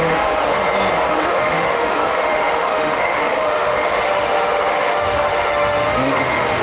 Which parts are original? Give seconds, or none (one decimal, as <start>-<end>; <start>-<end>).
0.6-1.1